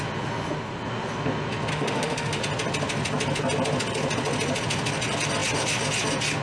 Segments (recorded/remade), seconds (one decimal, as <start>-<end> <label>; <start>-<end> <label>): 0.0-1.7 recorded; 1.7-2.4 remade; 2.4-6.4 recorded

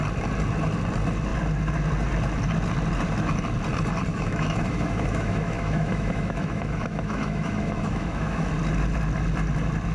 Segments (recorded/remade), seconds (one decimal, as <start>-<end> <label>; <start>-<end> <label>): 0.0-4.1 recorded; 4.1-8.5 remade; 8.5-9.9 recorded

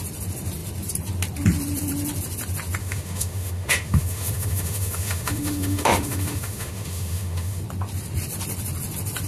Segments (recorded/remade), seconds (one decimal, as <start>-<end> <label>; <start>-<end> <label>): 0.0-2.8 recorded; 2.8-7.6 remade; 7.6-9.3 recorded